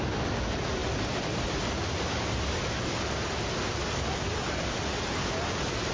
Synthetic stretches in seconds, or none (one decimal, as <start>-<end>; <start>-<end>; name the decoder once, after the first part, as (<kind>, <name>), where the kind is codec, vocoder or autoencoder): none